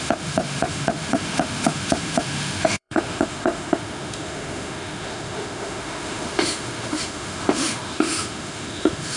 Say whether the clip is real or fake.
fake